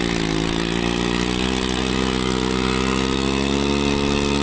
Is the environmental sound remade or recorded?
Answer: recorded